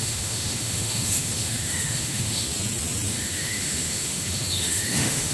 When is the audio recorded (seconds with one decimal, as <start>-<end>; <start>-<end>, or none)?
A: 2.5-3.1